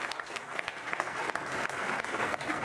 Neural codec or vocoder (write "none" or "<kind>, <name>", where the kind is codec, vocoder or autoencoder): codec, SNAC